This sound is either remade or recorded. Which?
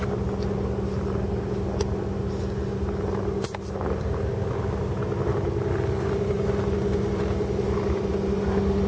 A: recorded